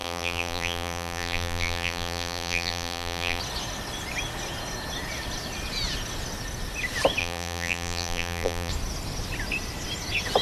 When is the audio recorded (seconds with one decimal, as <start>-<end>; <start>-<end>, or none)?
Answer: 3.4-7.2; 8.7-10.4